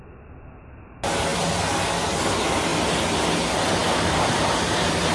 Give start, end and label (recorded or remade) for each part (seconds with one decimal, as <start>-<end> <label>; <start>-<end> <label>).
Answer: 0.0-5.1 recorded